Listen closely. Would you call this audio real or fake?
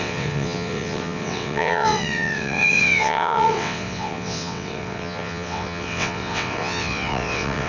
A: fake